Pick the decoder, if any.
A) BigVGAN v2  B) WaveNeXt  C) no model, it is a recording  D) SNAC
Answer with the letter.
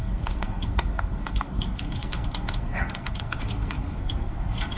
D